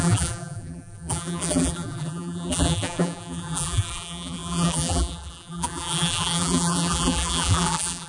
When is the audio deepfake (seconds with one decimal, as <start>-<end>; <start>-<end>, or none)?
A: 0.0-8.1